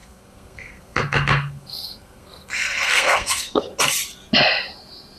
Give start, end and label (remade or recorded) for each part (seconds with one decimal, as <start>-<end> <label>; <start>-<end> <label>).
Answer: 0.0-3.7 remade; 3.7-5.2 recorded